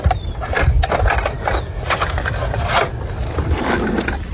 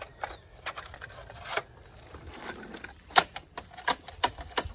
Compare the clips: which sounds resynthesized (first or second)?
second